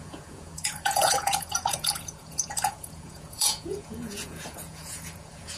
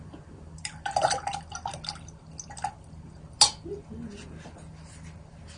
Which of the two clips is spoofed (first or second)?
first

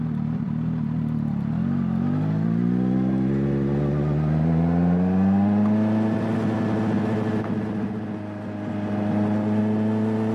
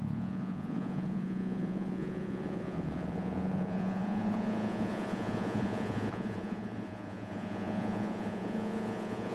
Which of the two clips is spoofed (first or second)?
second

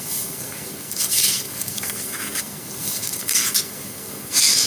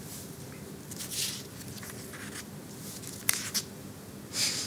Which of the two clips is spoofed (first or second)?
first